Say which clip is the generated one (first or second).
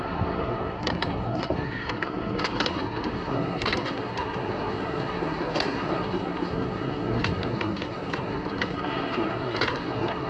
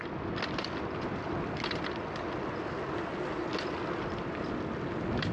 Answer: first